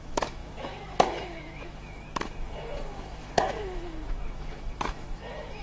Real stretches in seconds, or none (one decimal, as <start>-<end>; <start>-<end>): none